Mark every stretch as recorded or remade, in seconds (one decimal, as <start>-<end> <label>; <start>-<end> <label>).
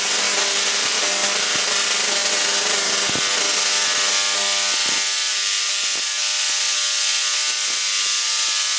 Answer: 0.0-8.8 recorded